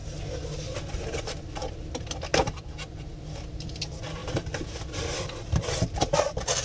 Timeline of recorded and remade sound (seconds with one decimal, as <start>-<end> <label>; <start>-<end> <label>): 0.0-0.9 recorded; 0.9-2.3 remade; 2.3-3.5 recorded; 3.5-4.2 remade; 4.2-4.9 recorded; 4.9-6.6 remade